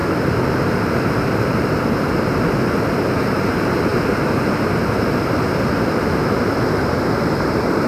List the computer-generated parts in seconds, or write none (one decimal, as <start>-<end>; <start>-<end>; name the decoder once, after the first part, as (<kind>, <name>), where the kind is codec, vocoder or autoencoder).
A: 0.5-7.9 (vocoder, BigVGAN v2)

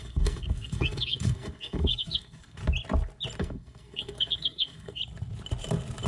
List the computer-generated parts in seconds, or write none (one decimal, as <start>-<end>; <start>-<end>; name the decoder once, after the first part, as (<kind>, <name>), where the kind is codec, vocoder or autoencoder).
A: 0.0-2.6 (codec, SNAC); 3.4-5.0

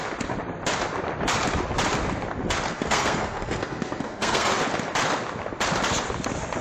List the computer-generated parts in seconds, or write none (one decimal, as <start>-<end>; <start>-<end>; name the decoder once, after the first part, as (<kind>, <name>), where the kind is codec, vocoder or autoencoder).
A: 2.7-4.6 (codec, SNAC)

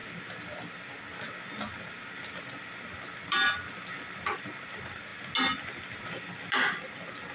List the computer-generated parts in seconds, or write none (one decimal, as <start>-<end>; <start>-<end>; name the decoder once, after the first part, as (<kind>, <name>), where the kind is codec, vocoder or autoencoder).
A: none

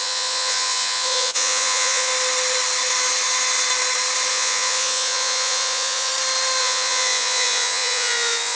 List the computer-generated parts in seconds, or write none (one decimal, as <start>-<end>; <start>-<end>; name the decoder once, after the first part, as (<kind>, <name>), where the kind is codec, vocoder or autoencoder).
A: 0.0-2.1 (vocoder, Vocos); 4.3-6.1; 6.6-8.6

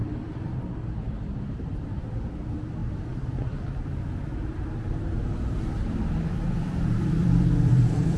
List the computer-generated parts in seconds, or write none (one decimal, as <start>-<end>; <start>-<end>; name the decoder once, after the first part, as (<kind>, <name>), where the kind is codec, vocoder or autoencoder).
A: 0.0-2.8 (vocoder, BigVGAN v2); 6.5-8.2

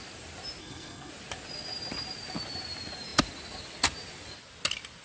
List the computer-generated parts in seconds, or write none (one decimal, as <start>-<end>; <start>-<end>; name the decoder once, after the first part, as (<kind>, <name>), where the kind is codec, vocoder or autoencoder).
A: 0.6-1.1 (codec, SNAC)